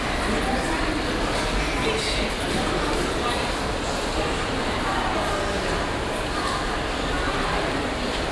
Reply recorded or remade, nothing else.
recorded